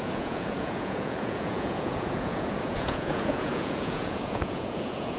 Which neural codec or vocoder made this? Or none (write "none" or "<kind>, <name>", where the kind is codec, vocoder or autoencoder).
vocoder, Vocos